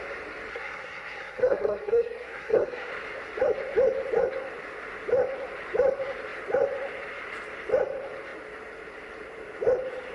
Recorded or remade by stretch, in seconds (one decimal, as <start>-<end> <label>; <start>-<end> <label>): 0.0-0.5 recorded; 0.5-2.9 remade; 2.9-10.1 recorded